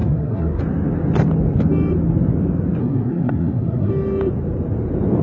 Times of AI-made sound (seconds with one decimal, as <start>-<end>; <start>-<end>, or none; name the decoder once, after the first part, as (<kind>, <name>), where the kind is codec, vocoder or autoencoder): 0.0-0.6 (codec, SNAC); 2.8-3.9